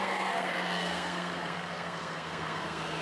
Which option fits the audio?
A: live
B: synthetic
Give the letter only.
B